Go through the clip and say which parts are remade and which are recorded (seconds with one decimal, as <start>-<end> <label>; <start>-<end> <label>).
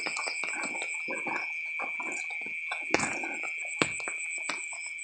0.0-5.0 recorded